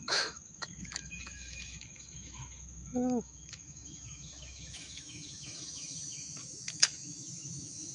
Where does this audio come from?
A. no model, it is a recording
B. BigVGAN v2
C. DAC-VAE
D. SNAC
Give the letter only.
C